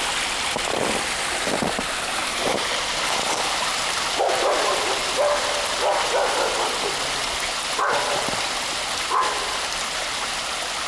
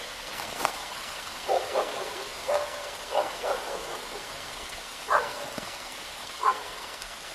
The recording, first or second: first